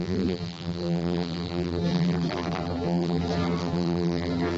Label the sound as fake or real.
fake